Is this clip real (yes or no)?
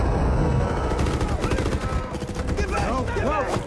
yes